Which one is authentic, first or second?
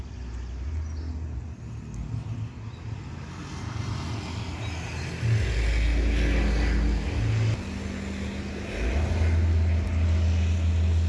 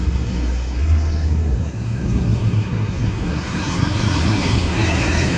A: first